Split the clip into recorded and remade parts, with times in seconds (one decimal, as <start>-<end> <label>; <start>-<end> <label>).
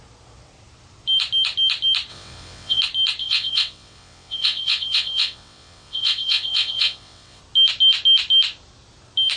0.0-2.1 recorded; 2.1-2.8 remade; 2.8-3.2 recorded; 3.2-7.4 remade; 7.4-9.4 recorded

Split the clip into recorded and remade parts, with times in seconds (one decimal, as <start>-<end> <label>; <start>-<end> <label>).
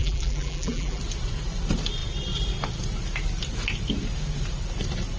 0.0-1.0 remade; 1.0-5.2 recorded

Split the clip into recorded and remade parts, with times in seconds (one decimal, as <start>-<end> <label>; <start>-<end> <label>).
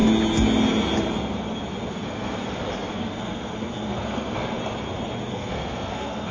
0.0-1.9 recorded; 1.9-2.4 remade; 2.4-2.9 recorded; 2.9-4.6 remade; 4.6-5.3 recorded; 5.3-6.3 remade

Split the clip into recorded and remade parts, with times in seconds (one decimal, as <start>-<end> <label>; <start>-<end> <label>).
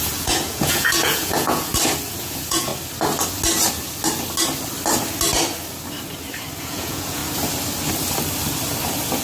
0.0-1.7 remade; 1.7-2.2 recorded; 2.2-2.7 remade; 2.7-6.6 recorded; 6.6-7.2 remade; 7.2-9.2 recorded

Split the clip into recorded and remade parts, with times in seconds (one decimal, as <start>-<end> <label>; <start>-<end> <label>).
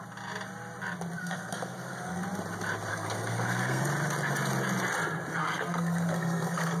0.0-1.2 recorded; 1.2-2.2 remade; 2.2-2.9 recorded; 2.9-3.8 remade; 3.8-5.3 recorded; 5.3-6.8 remade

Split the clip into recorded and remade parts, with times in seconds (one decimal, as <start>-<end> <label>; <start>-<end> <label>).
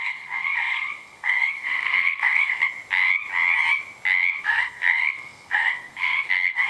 0.0-2.6 remade; 2.6-4.4 recorded; 4.4-6.7 remade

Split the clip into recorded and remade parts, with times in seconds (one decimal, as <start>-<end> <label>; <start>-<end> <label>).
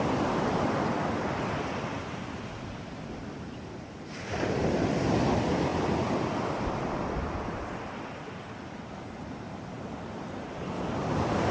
0.0-11.5 recorded